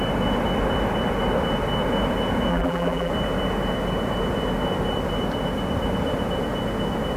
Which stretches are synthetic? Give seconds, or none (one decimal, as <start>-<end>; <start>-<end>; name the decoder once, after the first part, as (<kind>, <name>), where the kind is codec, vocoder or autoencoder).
2.5-3.1 (vocoder, BigVGAN v2)